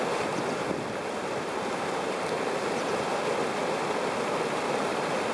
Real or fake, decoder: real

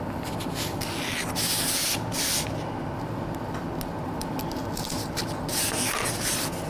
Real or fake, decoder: real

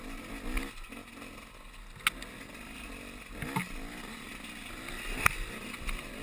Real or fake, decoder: real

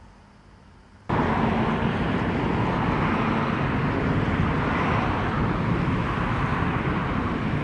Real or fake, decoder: real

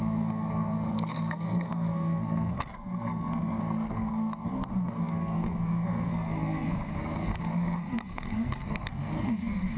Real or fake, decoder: fake, codec, SNAC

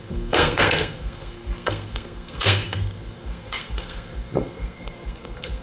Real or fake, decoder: fake, codec, SNAC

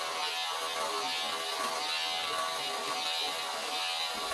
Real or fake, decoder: real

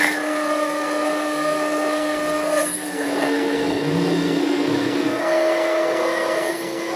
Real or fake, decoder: fake, codec, SNAC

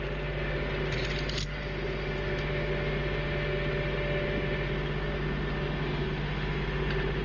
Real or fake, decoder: real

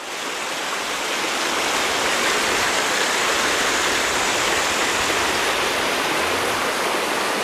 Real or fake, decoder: real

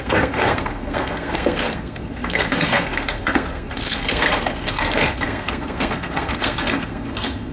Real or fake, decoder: fake, codec, SNAC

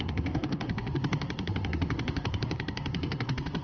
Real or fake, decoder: fake, codec, SNAC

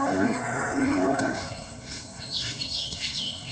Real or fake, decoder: fake, codec, SNAC